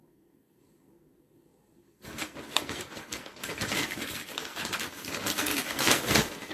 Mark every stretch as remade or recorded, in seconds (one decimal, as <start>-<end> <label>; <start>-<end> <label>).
0.0-6.5 remade